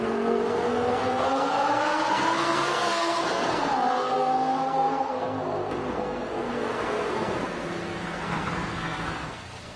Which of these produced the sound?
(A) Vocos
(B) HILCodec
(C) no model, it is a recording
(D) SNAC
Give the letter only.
D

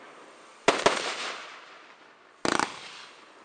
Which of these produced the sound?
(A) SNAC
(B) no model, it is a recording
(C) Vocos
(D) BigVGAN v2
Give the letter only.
B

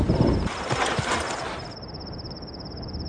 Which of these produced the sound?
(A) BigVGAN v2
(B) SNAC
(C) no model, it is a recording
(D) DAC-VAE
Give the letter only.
A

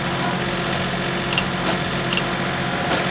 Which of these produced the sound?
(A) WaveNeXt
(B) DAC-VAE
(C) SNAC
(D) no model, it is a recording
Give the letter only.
D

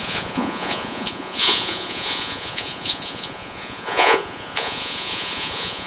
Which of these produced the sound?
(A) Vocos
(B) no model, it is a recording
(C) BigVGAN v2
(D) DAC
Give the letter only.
A